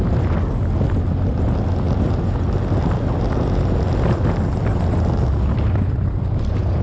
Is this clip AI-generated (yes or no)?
no